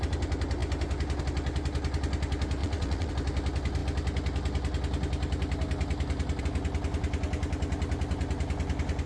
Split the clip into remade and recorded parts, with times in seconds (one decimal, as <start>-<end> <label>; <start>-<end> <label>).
0.0-2.6 recorded; 2.6-3.1 remade; 3.1-9.1 recorded